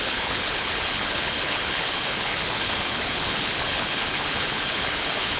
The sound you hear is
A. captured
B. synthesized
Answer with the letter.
B